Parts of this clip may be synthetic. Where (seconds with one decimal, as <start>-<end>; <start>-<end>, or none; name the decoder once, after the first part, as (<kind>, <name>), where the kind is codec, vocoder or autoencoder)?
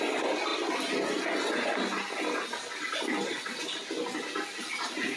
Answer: none